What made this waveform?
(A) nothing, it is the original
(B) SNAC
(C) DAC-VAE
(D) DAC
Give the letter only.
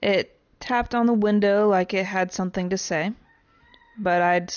A